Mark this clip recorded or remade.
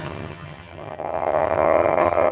remade